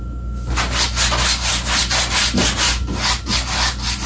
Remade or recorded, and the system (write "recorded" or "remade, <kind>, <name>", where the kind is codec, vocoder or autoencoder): recorded